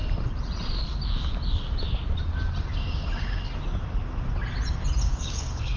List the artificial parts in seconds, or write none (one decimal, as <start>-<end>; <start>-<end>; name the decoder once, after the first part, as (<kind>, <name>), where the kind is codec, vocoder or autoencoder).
5.1-5.8 (codec, DAC)